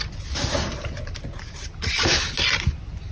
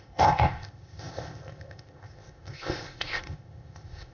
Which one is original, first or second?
first